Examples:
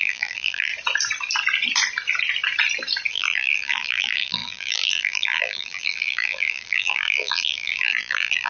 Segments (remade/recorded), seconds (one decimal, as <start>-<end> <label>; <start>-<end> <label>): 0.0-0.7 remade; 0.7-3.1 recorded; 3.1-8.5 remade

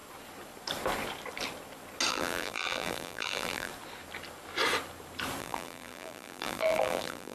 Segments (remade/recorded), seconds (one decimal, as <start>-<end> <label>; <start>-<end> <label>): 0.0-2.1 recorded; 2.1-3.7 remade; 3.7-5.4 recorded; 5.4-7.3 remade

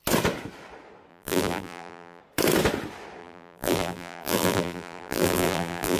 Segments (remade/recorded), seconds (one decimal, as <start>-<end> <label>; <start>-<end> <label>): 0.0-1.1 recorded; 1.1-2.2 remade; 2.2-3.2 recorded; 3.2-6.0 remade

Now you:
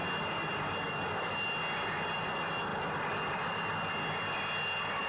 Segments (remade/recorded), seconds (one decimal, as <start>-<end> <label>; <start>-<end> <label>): 0.0-1.3 remade; 1.3-2.7 recorded; 2.7-3.7 remade; 3.7-5.1 recorded

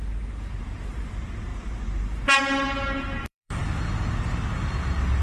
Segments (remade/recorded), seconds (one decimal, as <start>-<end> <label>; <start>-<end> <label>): 0.0-0.6 recorded; 0.6-3.6 remade; 3.6-5.2 recorded

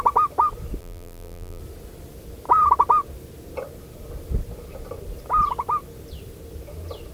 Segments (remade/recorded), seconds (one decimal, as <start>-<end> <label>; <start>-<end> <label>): 0.0-0.8 recorded; 0.8-1.6 remade; 1.6-7.1 recorded